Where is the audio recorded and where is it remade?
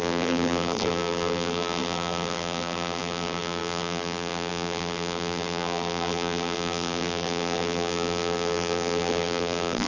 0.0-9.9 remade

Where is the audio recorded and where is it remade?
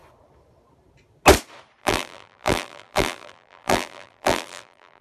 0.0-1.8 recorded; 1.8-5.0 remade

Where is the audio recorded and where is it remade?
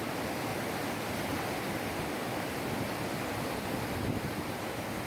0.0-5.1 remade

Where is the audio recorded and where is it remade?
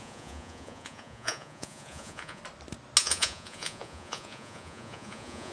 0.0-2.4 remade; 2.4-3.0 recorded; 3.0-5.5 remade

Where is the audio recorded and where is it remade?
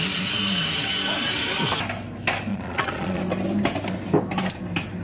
0.0-2.5 recorded; 2.5-3.2 remade; 3.2-5.0 recorded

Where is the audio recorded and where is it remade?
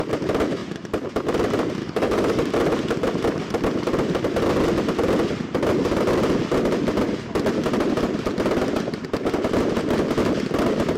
0.0-1.8 recorded; 1.8-2.5 remade; 2.5-11.0 recorded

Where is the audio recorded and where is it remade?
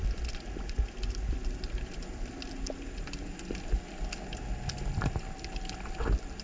0.0-6.4 recorded